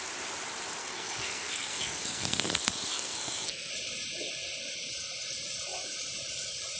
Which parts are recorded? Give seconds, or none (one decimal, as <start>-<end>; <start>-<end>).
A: 0.0-0.8; 3.7-6.8